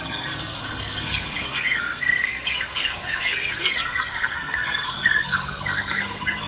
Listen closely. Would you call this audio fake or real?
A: fake